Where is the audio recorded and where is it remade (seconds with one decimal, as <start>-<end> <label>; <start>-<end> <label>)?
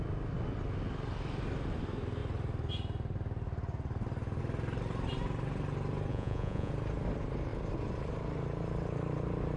0.0-6.1 recorded; 6.1-6.7 remade; 6.7-9.6 recorded